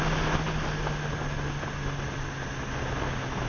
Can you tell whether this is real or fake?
real